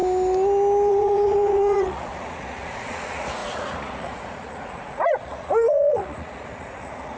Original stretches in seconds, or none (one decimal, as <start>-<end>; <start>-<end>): 0.0-0.9